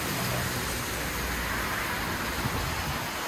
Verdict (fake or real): real